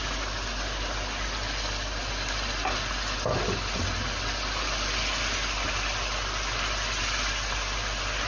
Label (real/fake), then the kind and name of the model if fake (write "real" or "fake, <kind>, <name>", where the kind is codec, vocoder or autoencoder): real